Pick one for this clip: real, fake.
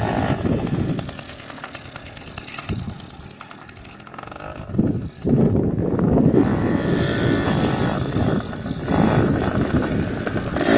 real